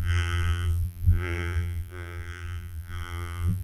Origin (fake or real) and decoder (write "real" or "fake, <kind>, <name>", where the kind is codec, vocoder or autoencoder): fake, vocoder, BigVGAN v2